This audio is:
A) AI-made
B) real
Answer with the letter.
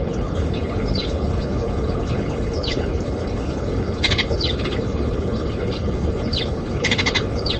A